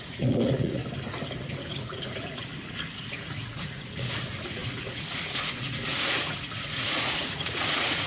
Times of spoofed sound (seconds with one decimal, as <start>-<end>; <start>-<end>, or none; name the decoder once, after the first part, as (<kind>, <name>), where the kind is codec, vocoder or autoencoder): 0.0-0.8 (vocoder, Vocos); 1.5-2.5; 3.1-8.1

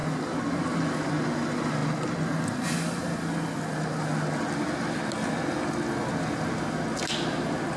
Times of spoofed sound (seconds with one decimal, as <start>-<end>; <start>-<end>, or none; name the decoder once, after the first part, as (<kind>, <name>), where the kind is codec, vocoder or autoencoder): none

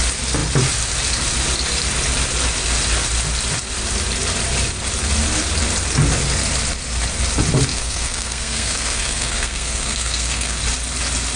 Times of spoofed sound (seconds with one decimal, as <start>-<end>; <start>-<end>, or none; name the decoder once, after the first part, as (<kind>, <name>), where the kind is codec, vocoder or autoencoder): 7.7-10.6 (codec, SNAC)

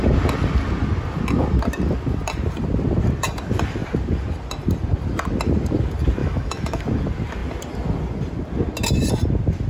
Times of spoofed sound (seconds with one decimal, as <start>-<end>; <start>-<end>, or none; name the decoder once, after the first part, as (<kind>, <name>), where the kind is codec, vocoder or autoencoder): 6.2-6.8 (autoencoder, DAC-VAE)

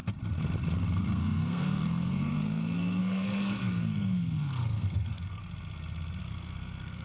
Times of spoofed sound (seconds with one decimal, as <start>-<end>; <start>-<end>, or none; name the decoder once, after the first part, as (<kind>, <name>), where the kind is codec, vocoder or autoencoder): 1.0-5.4 (codec, SNAC); 6.2-7.0

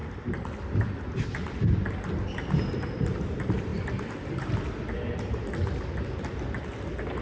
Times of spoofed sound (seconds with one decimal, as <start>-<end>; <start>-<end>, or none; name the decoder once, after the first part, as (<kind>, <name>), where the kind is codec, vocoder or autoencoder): none

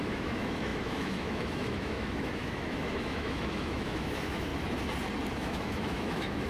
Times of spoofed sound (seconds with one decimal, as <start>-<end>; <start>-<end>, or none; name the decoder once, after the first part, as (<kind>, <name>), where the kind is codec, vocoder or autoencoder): 0.0-4.5 (autoencoder, DAC-VAE); 5.3-6.5